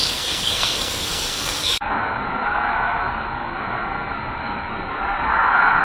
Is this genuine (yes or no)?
no